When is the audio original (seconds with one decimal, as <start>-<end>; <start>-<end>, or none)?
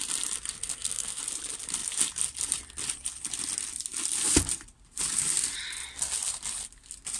0.0-0.6; 1.2-7.2